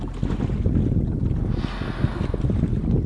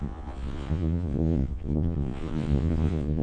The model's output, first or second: second